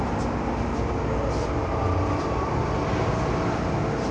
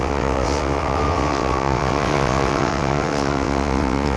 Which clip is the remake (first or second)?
second